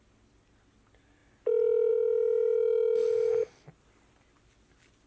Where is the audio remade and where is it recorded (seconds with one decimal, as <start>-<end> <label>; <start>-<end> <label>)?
0.0-5.1 recorded